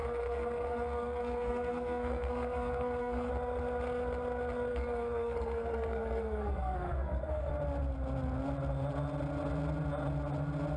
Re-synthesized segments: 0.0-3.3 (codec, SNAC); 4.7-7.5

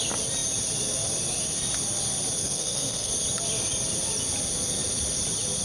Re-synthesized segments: 2.4-3.1 (codec, SNAC)

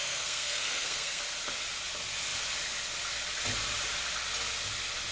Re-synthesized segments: 0.0-1.2 (codec, SNAC)

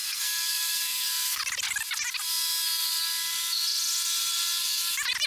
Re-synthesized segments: 0.0-1.4 (codec, SNAC)

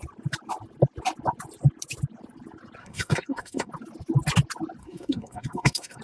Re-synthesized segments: 2.8-3.7 (codec, SNAC); 4.8-6.0

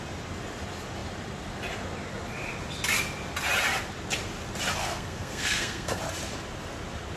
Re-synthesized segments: 4.8-6.0 (codec, SNAC)

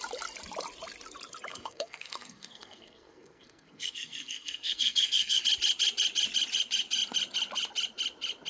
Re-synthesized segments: 1.5-5.4 (codec, SNAC)

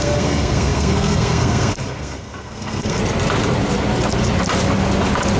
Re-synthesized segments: 0.0-3.0 (codec, SNAC)